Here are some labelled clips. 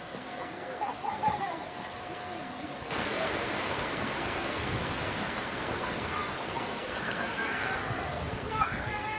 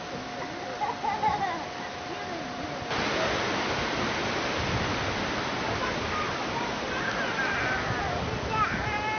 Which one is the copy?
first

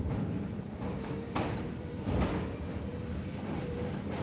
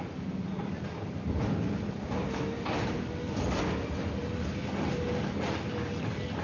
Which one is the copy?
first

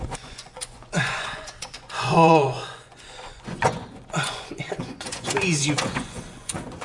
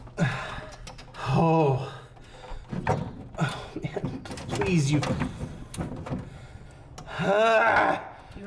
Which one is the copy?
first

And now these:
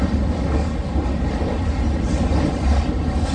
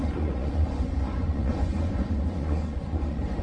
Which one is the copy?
second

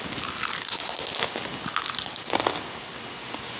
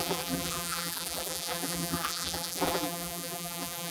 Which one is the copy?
second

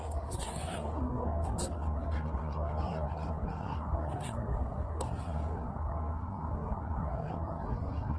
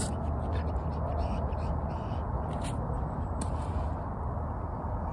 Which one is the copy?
first